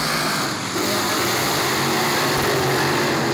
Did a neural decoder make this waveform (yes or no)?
no